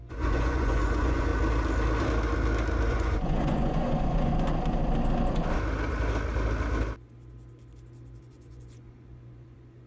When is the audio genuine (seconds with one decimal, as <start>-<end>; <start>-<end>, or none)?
1.3-2.9; 4.3-8.2